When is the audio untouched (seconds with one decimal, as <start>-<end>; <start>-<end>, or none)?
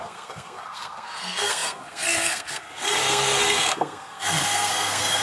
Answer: none